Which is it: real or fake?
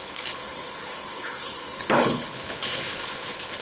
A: fake